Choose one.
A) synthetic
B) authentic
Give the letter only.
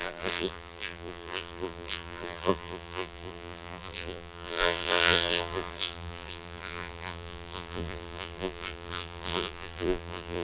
A